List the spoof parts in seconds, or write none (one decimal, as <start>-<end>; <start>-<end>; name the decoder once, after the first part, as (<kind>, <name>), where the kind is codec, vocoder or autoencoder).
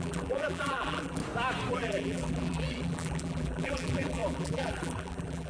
0.0-1.2 (vocoder, BigVGAN v2); 1.7-5.5